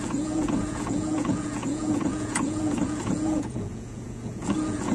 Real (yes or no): no